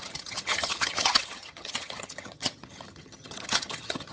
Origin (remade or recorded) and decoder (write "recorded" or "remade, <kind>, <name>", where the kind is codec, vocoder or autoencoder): remade, vocoder, HiFi-GAN